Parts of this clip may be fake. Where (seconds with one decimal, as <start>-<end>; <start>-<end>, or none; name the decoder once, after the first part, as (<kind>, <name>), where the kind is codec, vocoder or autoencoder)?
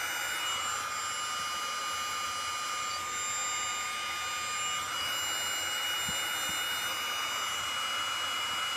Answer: none